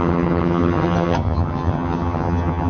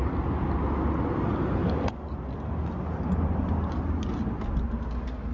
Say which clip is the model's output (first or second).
first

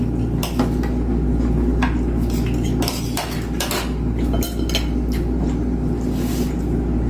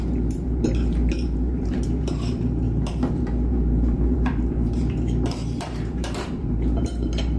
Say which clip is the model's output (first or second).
second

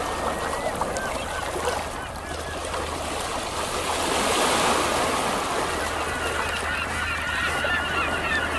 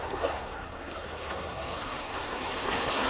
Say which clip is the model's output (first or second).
second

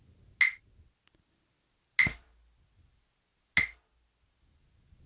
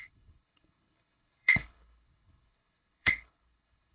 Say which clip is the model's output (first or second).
second